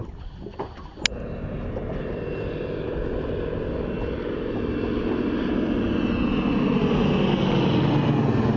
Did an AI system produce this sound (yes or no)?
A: no